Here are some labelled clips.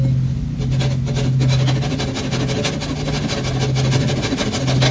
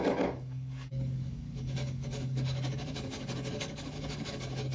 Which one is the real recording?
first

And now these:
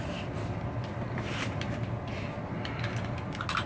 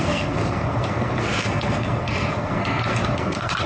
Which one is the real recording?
first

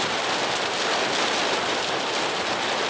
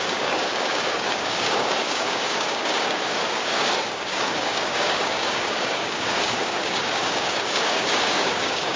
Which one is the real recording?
first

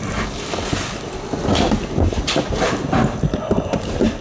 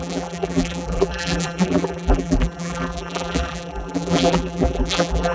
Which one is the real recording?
first